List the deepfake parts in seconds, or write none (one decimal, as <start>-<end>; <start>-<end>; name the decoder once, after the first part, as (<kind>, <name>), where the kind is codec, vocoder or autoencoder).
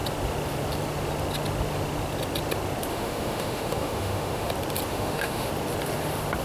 2.9-4.5 (autoencoder, DAC-VAE); 4.9-5.5